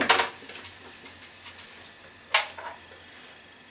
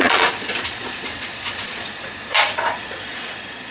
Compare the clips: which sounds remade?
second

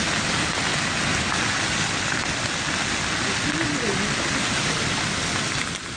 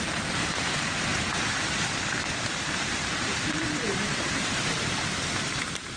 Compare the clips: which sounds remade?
second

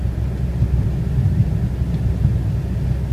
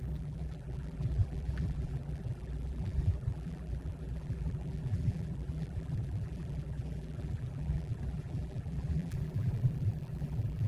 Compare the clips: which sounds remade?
second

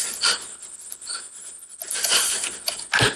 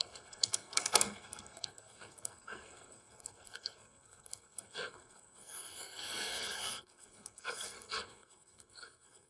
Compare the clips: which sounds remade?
second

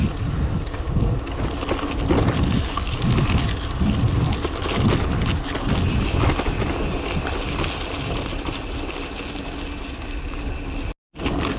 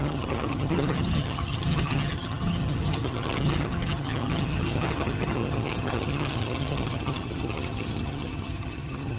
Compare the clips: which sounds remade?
second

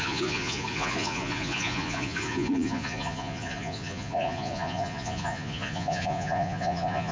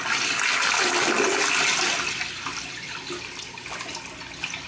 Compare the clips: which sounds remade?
first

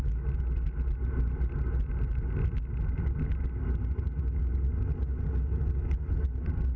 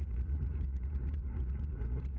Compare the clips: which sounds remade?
second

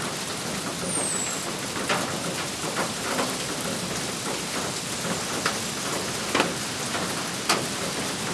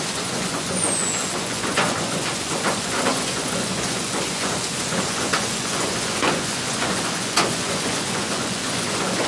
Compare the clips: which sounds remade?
second